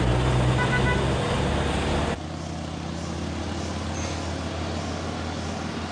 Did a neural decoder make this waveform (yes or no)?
no